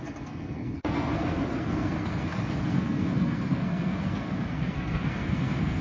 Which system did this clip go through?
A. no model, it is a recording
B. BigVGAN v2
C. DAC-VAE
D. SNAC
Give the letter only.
D